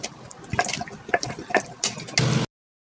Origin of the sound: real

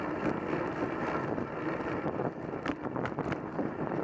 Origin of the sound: real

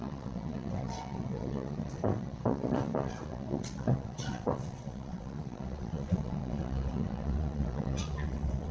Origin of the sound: fake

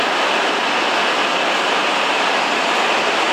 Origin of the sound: real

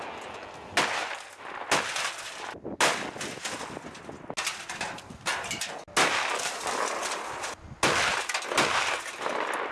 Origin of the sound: real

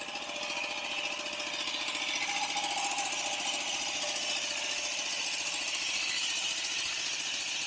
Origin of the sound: real